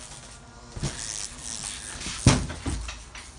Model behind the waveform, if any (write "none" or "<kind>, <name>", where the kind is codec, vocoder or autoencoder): none